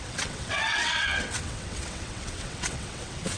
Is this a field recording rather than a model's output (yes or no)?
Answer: no